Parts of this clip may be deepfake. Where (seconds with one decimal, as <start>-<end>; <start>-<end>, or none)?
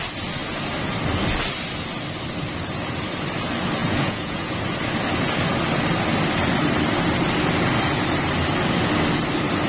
3.8-4.6